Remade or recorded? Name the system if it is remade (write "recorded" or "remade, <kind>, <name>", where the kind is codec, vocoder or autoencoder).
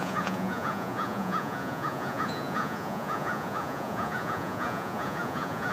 remade, vocoder, Vocos